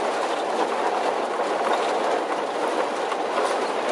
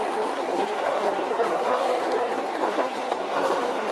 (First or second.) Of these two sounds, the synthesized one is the second